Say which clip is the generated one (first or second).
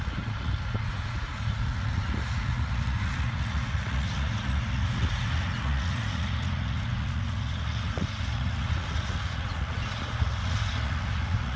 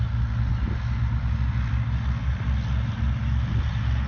first